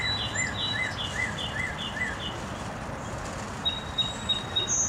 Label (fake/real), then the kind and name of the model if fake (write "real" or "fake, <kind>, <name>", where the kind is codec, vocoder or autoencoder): real